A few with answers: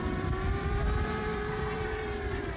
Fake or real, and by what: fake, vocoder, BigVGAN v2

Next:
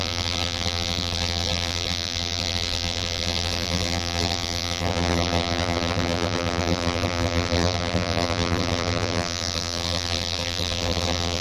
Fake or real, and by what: fake, vocoder, BigVGAN v2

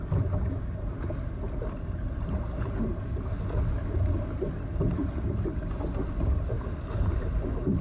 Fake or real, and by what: real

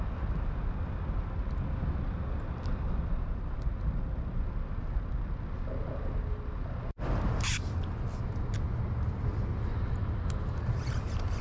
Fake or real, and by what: real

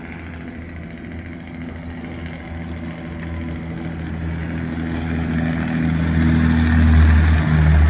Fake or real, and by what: real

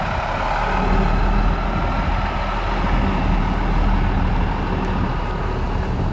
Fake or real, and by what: real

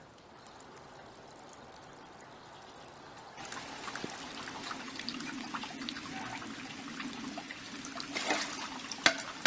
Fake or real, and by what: real